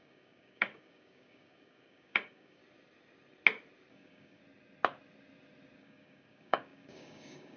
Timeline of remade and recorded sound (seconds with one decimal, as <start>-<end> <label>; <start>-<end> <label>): 0.0-2.6 remade; 2.6-3.9 recorded; 3.9-4.4 remade; 4.4-5.8 recorded; 5.8-7.6 remade